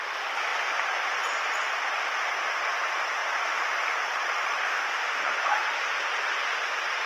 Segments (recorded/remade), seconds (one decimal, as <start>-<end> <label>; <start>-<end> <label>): 0.0-3.2 recorded; 3.2-5.2 remade; 5.2-7.1 recorded